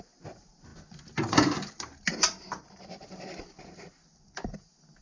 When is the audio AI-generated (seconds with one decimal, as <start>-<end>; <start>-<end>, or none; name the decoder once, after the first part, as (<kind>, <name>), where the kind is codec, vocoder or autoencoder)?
none

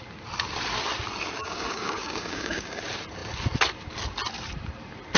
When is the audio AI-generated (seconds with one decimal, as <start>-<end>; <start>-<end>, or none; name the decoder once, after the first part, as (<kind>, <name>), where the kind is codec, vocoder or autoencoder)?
1.4-2.8 (codec, DAC)

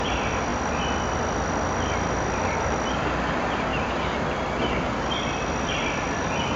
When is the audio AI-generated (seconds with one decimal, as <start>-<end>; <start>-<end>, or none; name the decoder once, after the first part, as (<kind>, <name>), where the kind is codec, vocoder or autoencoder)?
none

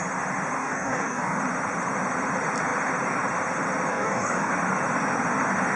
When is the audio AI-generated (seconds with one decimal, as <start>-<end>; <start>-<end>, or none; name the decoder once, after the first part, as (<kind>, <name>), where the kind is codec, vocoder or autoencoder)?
0.6-1.4 (codec, DAC); 3.9-4.5

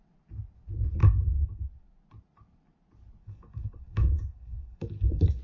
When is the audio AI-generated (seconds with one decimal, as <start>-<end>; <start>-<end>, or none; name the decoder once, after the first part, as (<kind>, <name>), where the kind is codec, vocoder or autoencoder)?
1.0-1.7 (codec, DAC); 3.2-5.4

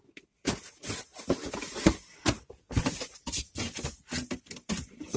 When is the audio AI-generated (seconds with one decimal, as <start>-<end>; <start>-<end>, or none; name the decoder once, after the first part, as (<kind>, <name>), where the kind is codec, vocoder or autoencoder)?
none